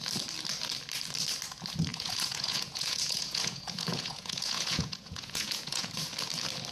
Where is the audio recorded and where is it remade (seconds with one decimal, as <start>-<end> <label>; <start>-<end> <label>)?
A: 0.0-1.9 recorded; 1.9-5.9 remade; 5.9-6.7 recorded